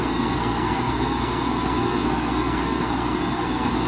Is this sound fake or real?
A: fake